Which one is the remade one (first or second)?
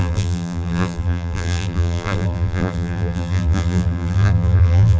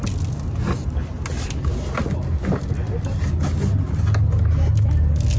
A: first